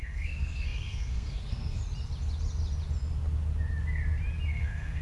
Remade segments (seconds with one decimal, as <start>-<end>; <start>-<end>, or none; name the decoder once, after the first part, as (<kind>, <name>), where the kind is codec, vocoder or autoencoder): 0.0-1.8 (codec, SNAC); 4.5-5.0